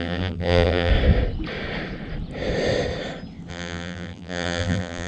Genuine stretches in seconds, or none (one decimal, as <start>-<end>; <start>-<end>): 0.9-3.5